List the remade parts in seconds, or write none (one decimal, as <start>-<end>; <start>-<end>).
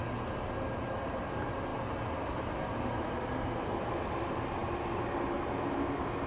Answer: none